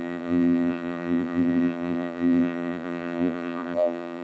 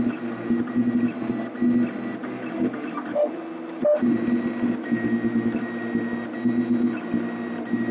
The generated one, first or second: first